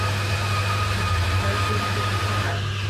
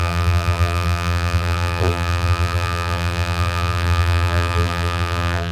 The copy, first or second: second